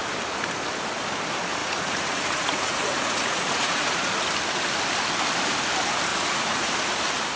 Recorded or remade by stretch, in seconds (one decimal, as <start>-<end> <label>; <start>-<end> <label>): 0.0-1.6 recorded; 1.6-4.1 remade; 4.1-6.1 recorded; 6.1-6.8 remade; 6.8-7.4 recorded